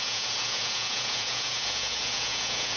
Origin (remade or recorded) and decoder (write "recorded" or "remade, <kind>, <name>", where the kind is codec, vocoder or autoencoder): remade, vocoder, Vocos